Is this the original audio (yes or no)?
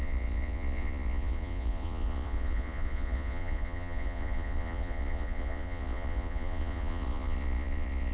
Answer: no